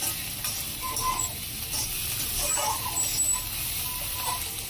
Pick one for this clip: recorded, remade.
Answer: recorded